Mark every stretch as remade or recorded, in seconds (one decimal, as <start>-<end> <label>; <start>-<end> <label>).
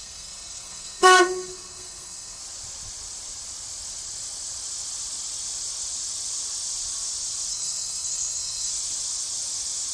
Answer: 0.0-2.4 remade; 2.4-7.5 recorded; 7.5-8.7 remade; 8.7-9.9 recorded